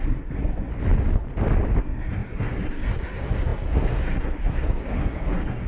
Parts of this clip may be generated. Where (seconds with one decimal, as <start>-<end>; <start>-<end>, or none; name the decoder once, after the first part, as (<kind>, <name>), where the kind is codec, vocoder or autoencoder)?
0.0-0.7 (codec, SNAC); 1.8-5.7